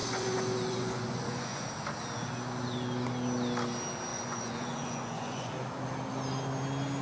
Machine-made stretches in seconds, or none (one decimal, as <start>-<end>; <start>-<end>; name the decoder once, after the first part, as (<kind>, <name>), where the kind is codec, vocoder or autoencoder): 0.0-1.7 (vocoder, Vocos); 4.1-5.5